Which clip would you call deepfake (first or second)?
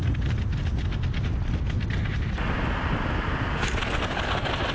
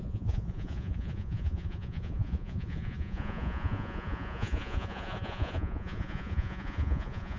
second